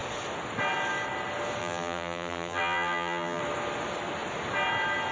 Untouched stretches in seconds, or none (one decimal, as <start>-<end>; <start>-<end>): 0.0-1.6; 3.4-5.1